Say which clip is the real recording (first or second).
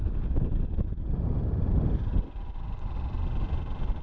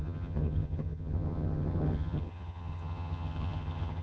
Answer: first